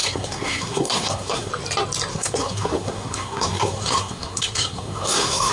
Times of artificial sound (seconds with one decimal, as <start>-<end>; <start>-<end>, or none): 0.0-1.5; 2.1-5.5